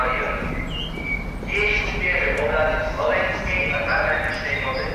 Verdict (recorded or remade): recorded